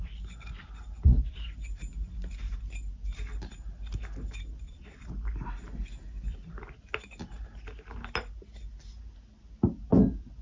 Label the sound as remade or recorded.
recorded